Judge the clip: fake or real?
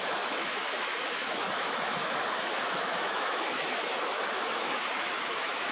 fake